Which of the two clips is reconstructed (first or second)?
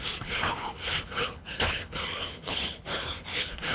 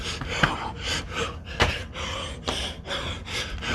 first